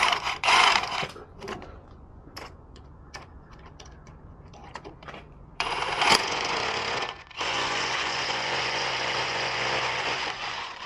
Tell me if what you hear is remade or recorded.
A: remade